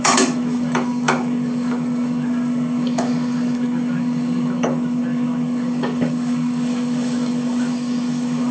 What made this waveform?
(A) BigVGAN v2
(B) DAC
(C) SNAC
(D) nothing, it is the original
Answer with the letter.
B